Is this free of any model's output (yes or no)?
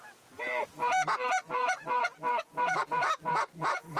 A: no